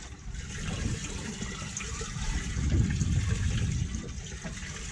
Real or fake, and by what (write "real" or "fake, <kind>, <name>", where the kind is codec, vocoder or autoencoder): real